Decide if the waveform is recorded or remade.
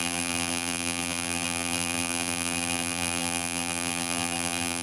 remade